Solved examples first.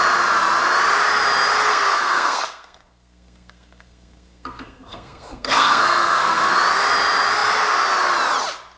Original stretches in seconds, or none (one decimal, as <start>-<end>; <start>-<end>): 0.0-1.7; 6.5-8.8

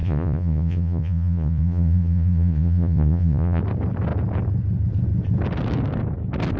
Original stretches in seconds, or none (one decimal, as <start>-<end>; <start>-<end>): 3.6-6.6

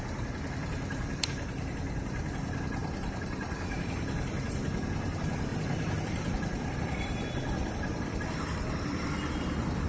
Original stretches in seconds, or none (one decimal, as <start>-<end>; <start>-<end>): 0.0-2.8; 3.9-5.5

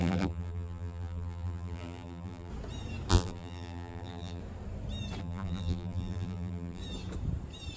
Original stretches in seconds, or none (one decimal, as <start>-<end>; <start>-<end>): 2.5-3.1; 4.4-5.2; 6.8-7.8